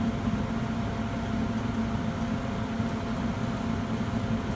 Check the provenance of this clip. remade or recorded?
recorded